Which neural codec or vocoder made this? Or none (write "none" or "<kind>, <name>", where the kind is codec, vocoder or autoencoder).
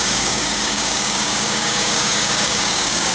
codec, DAC